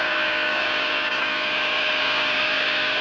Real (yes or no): no